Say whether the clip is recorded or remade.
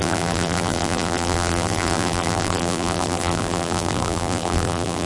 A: remade